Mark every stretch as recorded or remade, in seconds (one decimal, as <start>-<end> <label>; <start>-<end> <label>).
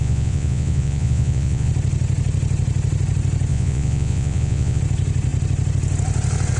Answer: 0.0-1.7 remade; 1.7-3.5 recorded; 3.5-4.8 remade; 4.8-6.6 recorded